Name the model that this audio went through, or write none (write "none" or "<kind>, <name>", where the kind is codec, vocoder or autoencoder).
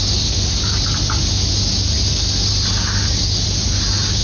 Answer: none